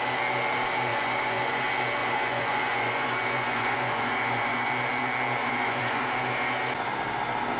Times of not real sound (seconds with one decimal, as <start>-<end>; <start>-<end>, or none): 0.9-1.6; 2.0-4.7; 5.4-6.0

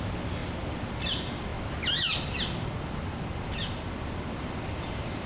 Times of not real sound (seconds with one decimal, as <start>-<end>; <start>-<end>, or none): none

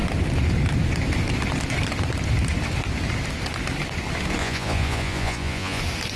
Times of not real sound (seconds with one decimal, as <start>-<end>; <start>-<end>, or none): 4.4-5.8

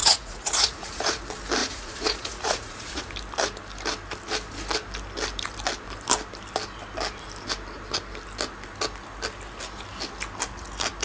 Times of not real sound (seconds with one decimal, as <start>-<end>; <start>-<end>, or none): 0.0-1.2; 1.6-3.0